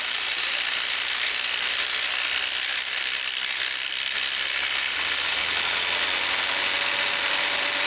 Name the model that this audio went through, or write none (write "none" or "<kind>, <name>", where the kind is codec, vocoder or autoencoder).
none